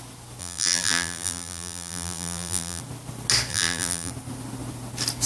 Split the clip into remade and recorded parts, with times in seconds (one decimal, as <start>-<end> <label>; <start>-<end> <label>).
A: 0.0-0.4 recorded; 0.4-2.8 remade; 2.8-3.5 recorded; 3.5-4.1 remade; 4.1-5.3 recorded